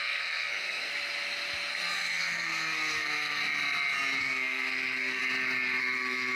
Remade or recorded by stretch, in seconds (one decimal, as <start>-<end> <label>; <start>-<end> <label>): 0.0-0.9 remade; 0.9-1.7 recorded; 1.7-3.4 remade; 3.4-4.2 recorded; 4.2-5.2 remade; 5.2-5.8 recorded; 5.8-6.4 remade